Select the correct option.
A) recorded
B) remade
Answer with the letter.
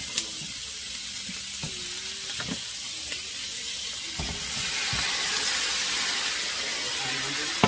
A